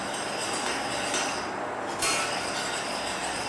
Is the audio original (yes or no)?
yes